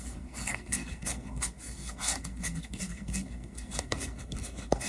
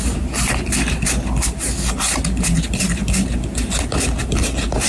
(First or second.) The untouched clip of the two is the second